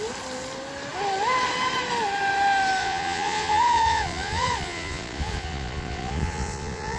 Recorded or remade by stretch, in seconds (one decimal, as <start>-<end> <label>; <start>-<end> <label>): 0.0-2.8 recorded; 2.8-7.0 remade